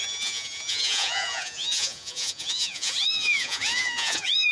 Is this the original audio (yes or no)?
no